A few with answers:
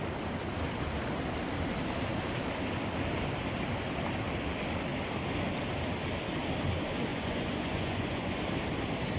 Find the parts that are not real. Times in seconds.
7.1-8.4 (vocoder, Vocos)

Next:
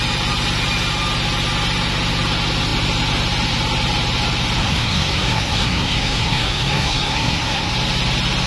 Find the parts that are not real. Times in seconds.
4.6-7.7 (codec, SNAC)